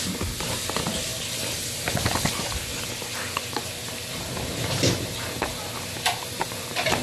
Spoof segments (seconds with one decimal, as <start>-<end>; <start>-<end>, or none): none